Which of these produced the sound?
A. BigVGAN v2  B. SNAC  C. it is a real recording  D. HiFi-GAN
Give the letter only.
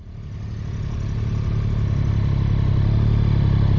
C